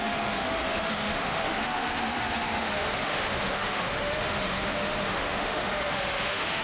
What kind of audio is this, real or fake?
fake